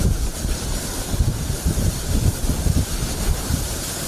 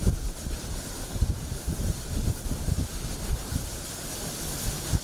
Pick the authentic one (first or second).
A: second